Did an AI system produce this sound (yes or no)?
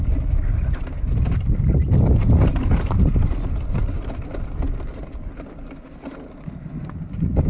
no